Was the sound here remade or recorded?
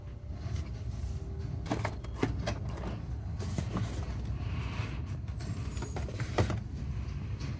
recorded